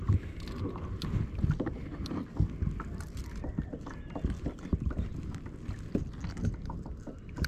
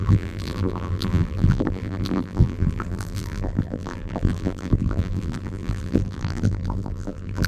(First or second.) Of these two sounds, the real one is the first